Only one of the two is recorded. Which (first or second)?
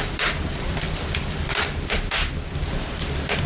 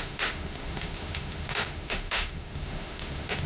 first